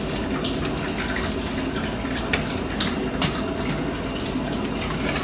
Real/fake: real